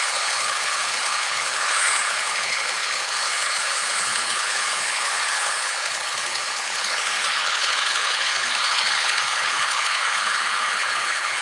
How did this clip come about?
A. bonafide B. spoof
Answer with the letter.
B